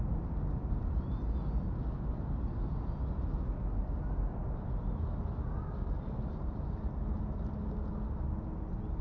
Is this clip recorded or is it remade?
recorded